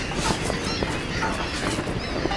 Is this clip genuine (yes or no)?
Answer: yes